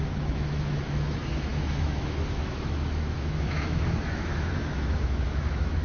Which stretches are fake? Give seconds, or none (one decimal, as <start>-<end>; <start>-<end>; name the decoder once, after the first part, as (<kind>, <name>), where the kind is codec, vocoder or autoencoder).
0.0-5.8 (autoencoder, DAC-VAE)